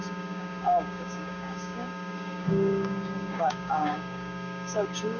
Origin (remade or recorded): remade